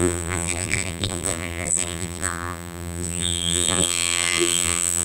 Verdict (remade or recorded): remade